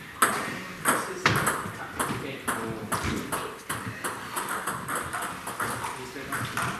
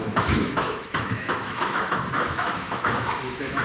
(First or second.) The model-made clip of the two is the second